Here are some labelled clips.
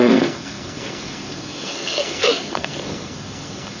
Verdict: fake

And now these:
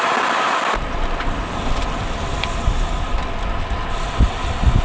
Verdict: real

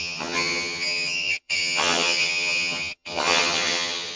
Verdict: fake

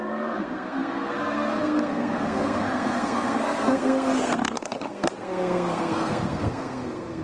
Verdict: fake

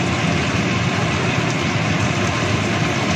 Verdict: real